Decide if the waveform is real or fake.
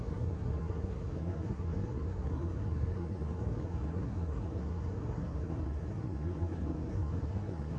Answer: fake